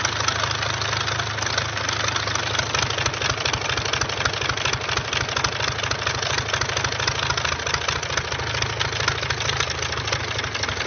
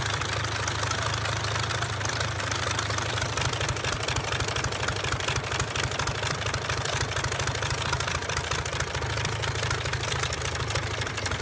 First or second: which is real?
first